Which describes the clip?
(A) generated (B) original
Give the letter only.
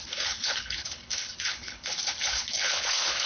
A